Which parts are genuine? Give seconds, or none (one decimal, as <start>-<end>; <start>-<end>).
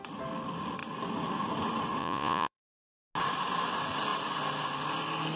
0.0-2.0; 2.6-5.4